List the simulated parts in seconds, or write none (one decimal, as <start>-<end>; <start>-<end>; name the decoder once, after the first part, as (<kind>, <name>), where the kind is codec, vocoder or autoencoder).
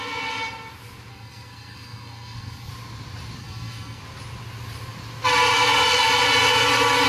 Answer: 1.1-2.7 (codec, SNAC); 3.4-4.0